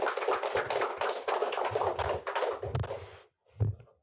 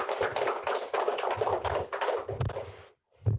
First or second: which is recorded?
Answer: first